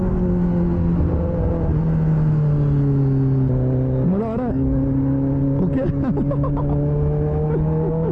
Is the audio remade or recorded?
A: recorded